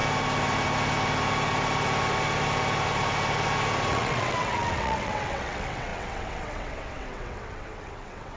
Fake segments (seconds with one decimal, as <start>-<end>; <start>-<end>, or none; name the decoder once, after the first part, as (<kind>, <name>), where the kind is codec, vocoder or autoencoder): 3.9-8.4 (vocoder, WaveNeXt)